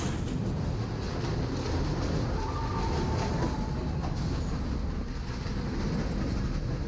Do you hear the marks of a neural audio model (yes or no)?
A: no